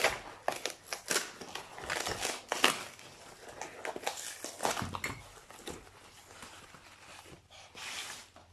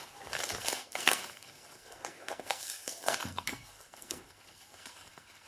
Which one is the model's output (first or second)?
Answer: second